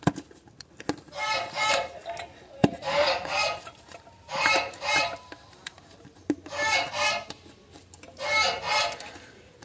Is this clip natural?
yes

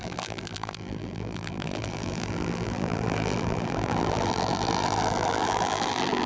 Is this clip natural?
no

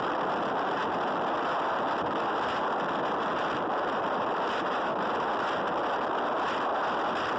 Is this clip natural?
yes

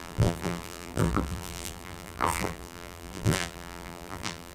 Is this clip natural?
no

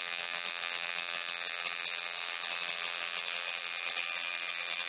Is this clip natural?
no